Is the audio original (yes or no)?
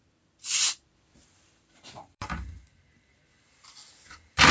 no